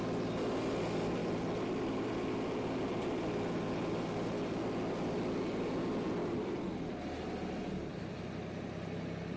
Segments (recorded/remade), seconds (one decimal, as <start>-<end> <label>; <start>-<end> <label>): 0.0-9.4 recorded